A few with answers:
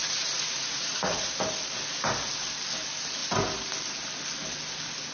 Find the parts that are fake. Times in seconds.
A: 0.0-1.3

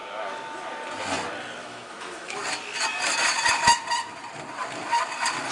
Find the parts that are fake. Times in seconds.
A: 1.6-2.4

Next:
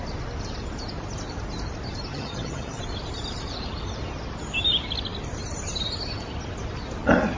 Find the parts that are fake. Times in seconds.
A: 2.1-2.8